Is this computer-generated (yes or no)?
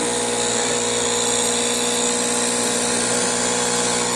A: no